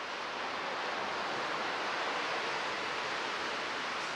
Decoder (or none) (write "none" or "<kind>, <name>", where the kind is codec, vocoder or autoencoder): none